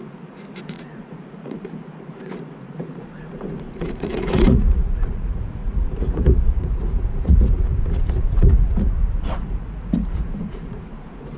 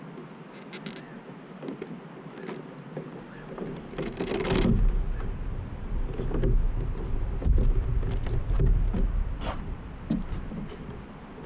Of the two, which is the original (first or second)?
second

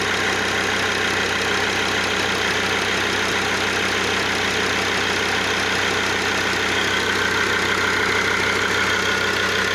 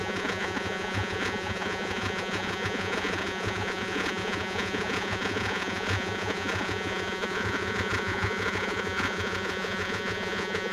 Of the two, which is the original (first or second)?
first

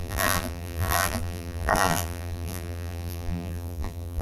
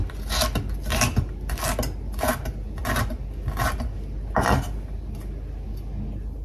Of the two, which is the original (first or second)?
second